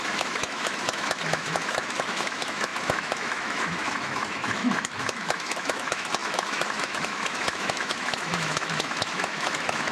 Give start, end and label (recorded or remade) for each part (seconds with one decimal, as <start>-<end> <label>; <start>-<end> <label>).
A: 0.0-9.9 remade